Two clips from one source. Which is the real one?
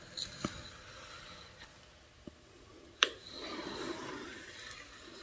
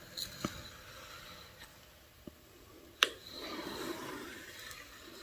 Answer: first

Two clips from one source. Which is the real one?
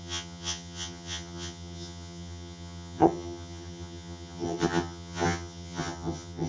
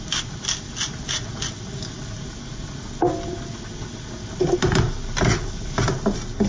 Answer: second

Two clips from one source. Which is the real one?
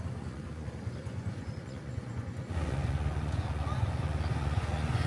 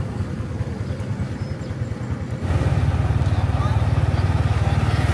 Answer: second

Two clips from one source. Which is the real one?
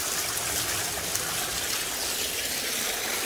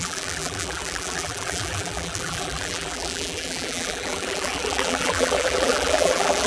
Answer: first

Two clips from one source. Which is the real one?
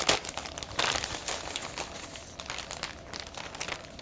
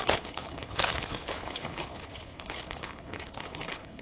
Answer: first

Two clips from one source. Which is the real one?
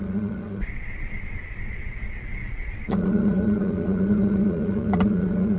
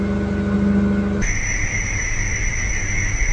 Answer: second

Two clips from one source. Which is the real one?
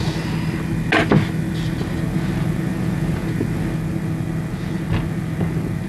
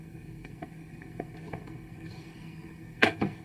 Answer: first